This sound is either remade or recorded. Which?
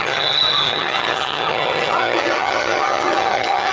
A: remade